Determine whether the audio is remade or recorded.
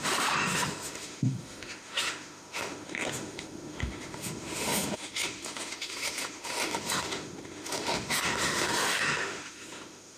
remade